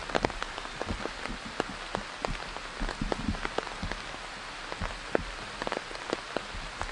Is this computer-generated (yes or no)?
no